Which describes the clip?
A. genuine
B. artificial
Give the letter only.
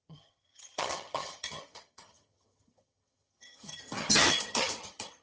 B